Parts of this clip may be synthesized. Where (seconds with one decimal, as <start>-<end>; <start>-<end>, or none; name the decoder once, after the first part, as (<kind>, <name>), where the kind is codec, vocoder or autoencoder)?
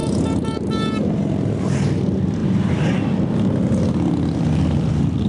none